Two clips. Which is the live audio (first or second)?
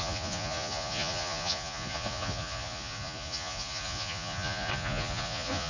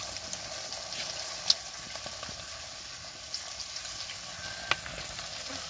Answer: second